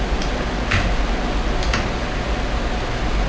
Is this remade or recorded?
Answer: recorded